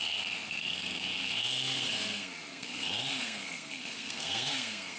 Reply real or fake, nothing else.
fake